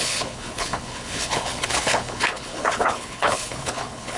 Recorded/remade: remade